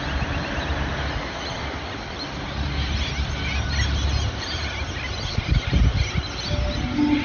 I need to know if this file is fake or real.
real